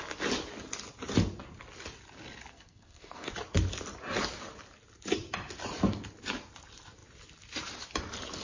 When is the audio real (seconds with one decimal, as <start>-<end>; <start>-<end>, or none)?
0.0-2.5; 3.3-8.4